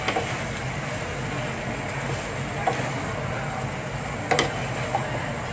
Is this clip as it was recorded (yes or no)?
yes